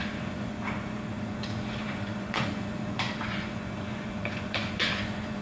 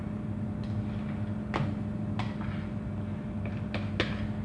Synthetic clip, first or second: first